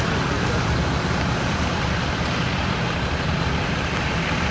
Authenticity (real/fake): fake